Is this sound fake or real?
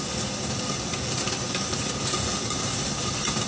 real